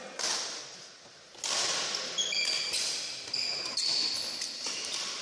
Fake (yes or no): no